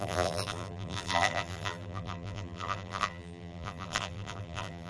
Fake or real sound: fake